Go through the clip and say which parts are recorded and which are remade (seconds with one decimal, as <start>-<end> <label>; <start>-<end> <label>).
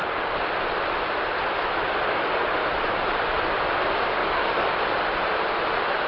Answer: 0.0-4.2 recorded; 4.2-4.7 remade; 4.7-6.1 recorded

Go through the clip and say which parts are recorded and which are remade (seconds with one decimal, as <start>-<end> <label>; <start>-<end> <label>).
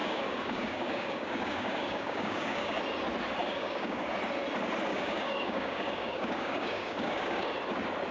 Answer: 0.0-2.8 remade; 2.8-3.4 recorded; 3.4-4.0 remade; 4.0-4.9 recorded; 4.9-7.5 remade; 7.5-8.1 recorded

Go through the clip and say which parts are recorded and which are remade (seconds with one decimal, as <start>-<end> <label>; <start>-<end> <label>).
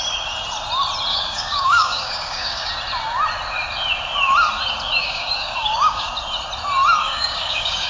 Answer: 0.0-1.1 recorded; 1.1-2.7 remade; 2.7-5.0 recorded; 5.0-6.1 remade; 6.1-7.0 recorded; 7.0-7.9 remade